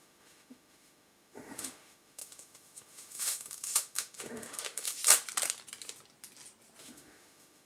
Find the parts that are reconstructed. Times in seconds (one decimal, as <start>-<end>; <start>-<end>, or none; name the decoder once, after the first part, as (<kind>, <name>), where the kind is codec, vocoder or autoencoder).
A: 0.0-5.0 (autoencoder, DAC-VAE); 6.8-7.6